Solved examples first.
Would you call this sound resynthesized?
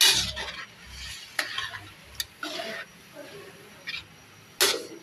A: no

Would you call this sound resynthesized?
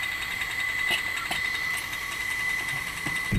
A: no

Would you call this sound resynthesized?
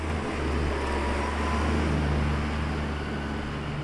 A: no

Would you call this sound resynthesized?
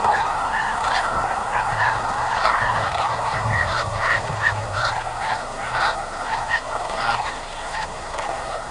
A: yes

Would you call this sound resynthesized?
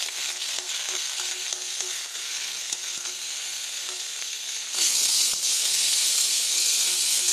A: yes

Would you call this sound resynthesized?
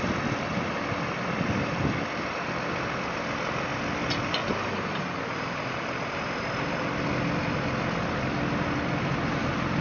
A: no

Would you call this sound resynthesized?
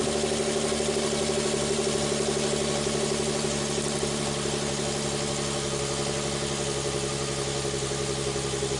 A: no